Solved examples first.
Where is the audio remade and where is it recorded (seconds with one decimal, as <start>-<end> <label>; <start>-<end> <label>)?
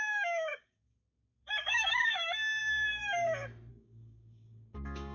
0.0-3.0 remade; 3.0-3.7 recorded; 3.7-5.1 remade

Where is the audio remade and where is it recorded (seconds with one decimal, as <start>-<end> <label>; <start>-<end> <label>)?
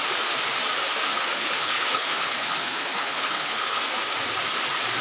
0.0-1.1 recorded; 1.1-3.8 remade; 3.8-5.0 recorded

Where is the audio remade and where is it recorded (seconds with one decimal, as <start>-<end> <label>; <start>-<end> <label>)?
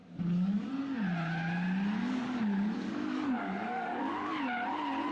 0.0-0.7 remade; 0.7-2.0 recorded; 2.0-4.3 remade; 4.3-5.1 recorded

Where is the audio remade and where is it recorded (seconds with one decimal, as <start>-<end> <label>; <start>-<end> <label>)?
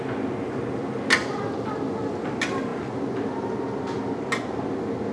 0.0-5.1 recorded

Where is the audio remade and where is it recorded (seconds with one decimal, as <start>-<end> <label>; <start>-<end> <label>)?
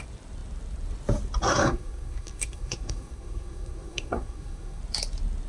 0.0-1.5 recorded; 1.5-4.8 remade; 4.8-5.5 recorded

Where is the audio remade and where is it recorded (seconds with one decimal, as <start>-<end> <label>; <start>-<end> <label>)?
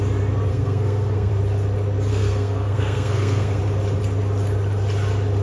0.0-0.5 recorded; 0.5-1.3 remade; 1.3-2.1 recorded; 2.1-3.6 remade; 3.6-5.4 recorded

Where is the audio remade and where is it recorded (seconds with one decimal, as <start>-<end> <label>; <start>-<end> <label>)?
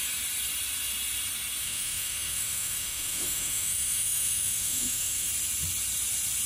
0.0-1.6 recorded; 1.6-5.3 remade; 5.3-6.5 recorded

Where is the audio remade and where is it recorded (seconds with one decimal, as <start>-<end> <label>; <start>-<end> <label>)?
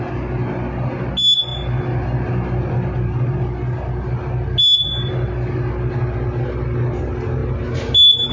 0.0-8.3 recorded